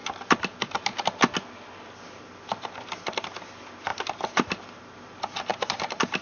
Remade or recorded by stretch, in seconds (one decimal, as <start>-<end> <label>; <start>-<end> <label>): 0.0-3.9 recorded; 3.9-4.8 remade; 4.8-5.5 recorded; 5.5-6.2 remade